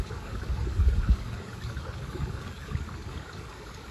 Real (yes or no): no